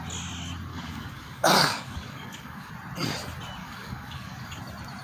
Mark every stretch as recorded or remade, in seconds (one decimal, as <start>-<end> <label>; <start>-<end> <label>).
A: 0.0-0.7 recorded; 0.7-2.7 remade; 2.7-3.6 recorded; 3.6-4.6 remade; 4.6-5.0 recorded